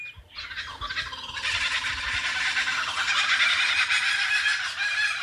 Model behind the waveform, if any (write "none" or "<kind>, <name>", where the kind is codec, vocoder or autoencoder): none